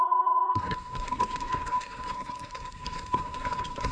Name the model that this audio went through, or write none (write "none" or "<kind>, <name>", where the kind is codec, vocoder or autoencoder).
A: codec, SNAC